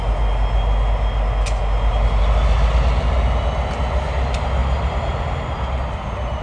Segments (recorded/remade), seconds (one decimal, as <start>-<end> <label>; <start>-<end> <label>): 0.0-6.4 recorded

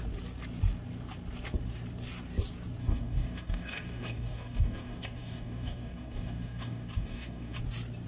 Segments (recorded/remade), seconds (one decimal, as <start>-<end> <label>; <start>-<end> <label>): 0.0-2.8 recorded; 2.8-7.6 remade; 7.6-8.1 recorded